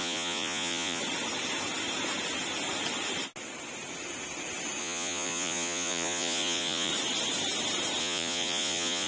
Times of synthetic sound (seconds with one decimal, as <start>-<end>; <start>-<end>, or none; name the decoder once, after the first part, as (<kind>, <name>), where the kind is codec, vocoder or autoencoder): 0.0-1.0 (vocoder, Vocos); 4.8-6.9; 8.0-9.1

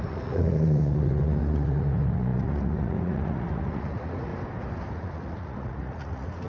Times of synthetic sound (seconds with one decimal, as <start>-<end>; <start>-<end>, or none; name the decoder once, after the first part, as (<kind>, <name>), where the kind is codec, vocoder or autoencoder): 0.0-4.3 (vocoder, Vocos); 4.9-6.5

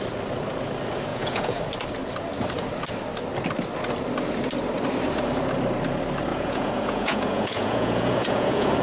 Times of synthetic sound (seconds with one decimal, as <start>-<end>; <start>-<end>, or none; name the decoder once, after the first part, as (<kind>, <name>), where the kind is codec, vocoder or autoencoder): 1.1-1.6 (vocoder, Vocos); 6.3-8.8